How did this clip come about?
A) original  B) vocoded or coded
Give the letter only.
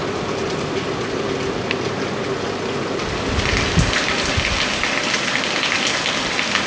A